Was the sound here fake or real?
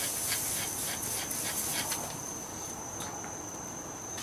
real